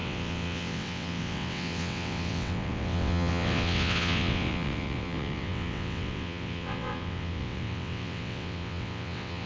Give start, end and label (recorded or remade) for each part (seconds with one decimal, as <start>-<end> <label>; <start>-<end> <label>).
0.0-9.5 remade